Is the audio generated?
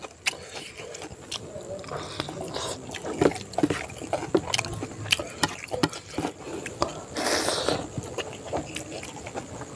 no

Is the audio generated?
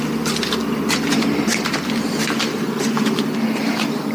no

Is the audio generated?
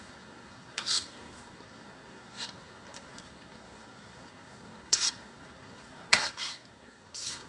yes